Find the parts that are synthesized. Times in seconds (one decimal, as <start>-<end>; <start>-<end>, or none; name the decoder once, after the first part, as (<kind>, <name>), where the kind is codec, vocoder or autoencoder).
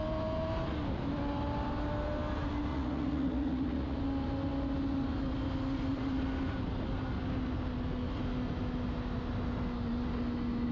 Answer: 2.7-4.0 (vocoder, Vocos)